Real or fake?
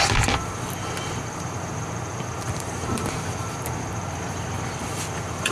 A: fake